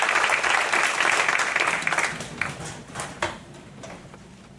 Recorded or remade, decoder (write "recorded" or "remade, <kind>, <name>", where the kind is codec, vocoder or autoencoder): recorded